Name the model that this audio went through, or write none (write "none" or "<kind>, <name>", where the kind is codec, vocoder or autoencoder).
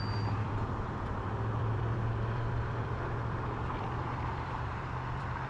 vocoder, BigVGAN v2